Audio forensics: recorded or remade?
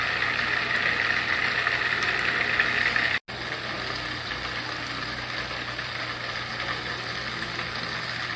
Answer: recorded